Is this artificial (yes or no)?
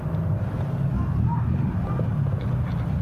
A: no